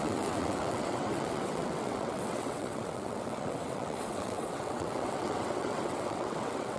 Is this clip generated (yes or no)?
yes